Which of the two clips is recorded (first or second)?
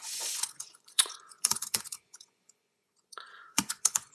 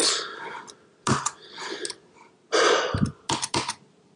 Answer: second